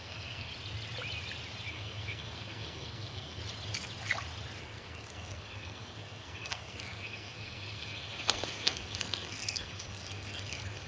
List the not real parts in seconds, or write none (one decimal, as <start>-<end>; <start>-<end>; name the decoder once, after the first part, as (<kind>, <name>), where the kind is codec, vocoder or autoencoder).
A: 0.0-0.5 (codec, SNAC); 1.7-3.4; 4.6-10.9